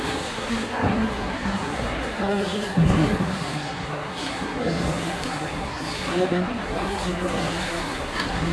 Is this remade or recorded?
remade